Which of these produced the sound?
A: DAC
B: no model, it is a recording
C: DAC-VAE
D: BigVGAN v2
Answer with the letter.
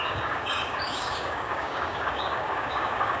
A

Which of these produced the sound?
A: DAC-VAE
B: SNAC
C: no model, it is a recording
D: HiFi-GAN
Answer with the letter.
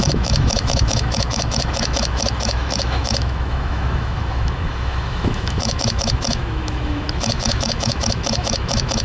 A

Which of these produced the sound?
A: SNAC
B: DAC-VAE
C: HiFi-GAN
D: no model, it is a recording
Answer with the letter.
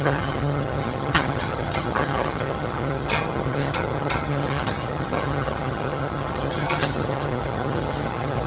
C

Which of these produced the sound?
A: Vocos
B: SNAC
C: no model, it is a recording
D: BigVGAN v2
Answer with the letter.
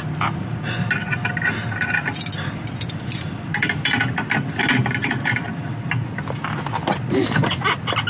C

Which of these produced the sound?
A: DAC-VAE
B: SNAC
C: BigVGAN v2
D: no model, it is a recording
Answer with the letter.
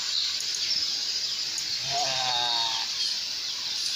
D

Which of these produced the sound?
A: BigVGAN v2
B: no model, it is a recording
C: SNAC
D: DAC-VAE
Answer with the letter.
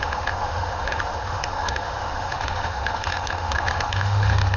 D